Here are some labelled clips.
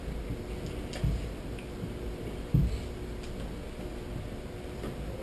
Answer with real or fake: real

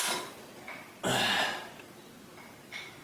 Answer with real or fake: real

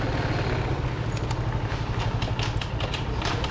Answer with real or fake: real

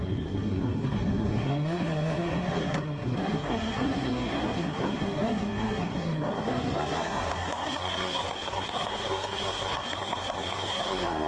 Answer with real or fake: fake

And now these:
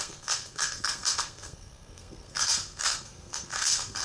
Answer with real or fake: fake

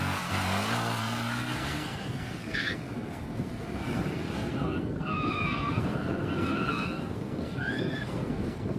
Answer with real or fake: fake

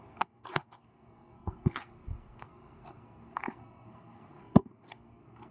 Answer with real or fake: fake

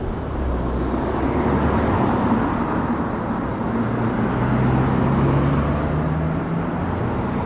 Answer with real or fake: real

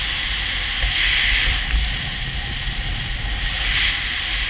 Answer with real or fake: real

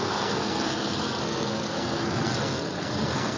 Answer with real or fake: fake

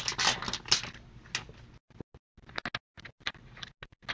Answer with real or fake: real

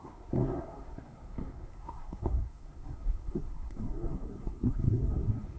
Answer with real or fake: fake